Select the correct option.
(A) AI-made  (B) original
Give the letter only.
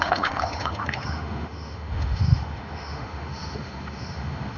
A